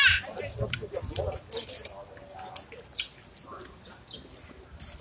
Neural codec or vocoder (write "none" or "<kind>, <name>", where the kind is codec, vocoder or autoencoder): none